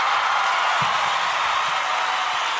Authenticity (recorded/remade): recorded